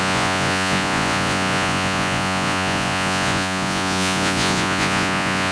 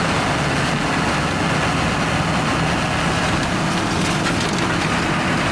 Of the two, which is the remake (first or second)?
first